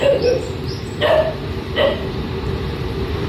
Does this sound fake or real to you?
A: fake